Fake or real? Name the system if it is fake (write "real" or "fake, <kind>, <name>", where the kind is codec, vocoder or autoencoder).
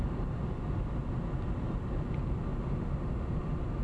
real